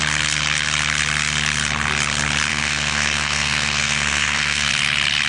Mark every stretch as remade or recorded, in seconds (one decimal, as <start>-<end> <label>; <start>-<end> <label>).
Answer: 0.0-2.5 recorded; 2.5-4.7 remade; 4.7-5.3 recorded